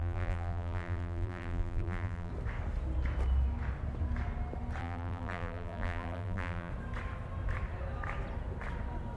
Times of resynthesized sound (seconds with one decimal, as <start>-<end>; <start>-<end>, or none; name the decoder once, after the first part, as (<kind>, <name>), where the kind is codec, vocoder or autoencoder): 0.0-2.3 (vocoder, BigVGAN v2); 4.8-6.7